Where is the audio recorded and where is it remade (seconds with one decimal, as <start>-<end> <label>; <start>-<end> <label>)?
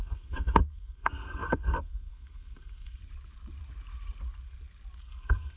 0.0-3.0 remade; 3.0-5.0 recorded; 5.0-5.6 remade